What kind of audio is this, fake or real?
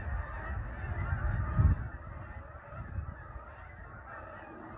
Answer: real